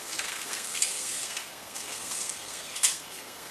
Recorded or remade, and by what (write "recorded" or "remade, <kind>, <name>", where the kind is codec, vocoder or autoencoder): remade, codec, SNAC